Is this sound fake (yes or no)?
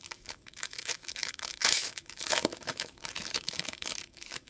yes